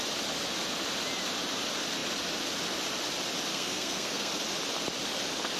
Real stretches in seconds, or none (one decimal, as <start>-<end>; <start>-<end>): 0.0-3.5; 4.3-5.6